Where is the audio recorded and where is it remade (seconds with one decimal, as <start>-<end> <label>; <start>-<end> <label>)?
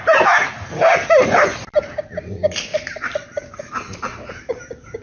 0.0-2.7 recorded; 2.7-3.7 remade; 3.7-5.0 recorded